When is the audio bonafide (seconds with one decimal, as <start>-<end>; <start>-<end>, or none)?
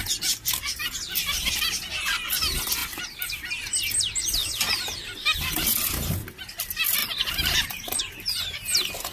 0.0-2.8; 3.5-4.4; 5.4-7.0; 8.0-9.1